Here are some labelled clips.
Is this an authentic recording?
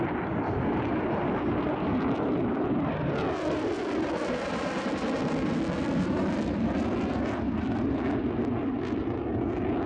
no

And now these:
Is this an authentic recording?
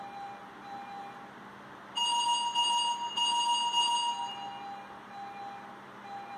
yes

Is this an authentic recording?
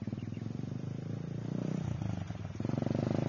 yes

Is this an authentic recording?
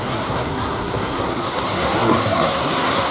no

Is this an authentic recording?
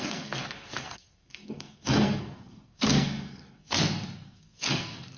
no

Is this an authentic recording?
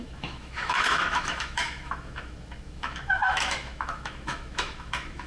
no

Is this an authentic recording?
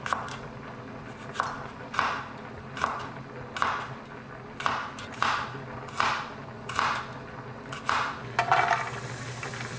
yes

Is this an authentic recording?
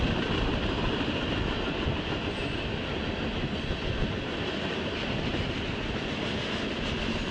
yes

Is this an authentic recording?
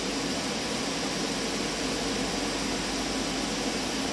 yes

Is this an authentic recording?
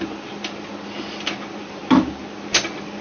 yes